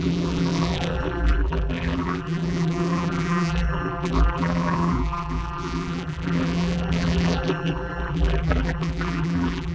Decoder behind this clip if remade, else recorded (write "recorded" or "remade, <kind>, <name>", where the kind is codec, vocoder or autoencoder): remade, vocoder, BigVGAN v2